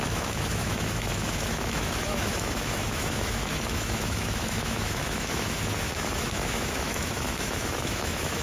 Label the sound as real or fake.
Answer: fake